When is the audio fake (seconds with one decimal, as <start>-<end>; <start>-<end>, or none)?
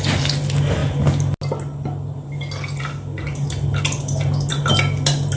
none